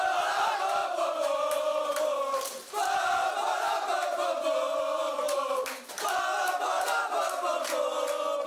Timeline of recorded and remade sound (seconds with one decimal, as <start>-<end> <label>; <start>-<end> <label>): 0.0-0.8 recorded; 0.8-1.5 remade; 1.5-1.9 recorded; 1.9-6.2 remade; 6.2-8.5 recorded